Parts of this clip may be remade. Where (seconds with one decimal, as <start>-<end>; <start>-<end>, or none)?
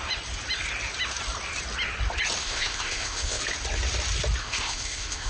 2.4-3.4; 4.4-5.3